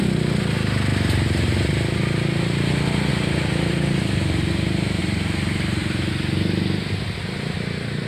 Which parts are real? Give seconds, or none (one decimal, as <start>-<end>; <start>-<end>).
0.0-3.1; 4.5-5.0; 6.1-8.1